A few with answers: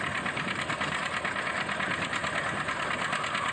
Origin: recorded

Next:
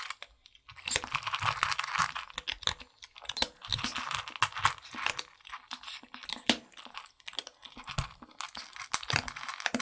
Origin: recorded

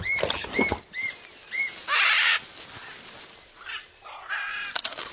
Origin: recorded